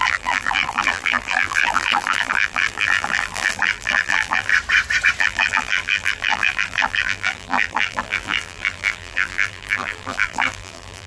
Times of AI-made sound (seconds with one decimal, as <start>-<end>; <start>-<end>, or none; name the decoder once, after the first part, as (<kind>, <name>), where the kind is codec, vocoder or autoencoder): 0.0-4.5 (vocoder, BigVGAN v2); 5.2-11.1